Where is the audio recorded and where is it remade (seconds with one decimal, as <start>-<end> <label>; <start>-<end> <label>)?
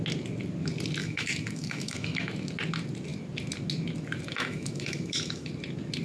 0.0-1.0 recorded; 1.0-2.3 remade; 2.3-4.3 recorded; 4.3-5.5 remade; 5.5-6.0 recorded